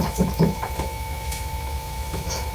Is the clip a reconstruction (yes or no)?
yes